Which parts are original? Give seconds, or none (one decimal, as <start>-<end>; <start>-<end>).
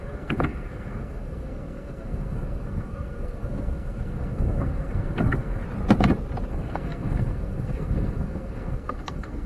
5.6-6.5